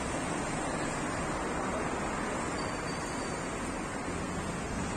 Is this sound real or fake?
real